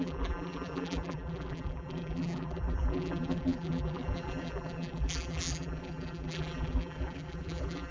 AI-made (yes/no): yes